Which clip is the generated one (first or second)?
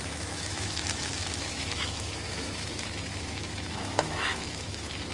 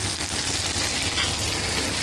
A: first